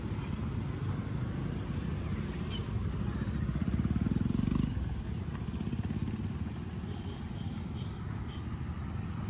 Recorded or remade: recorded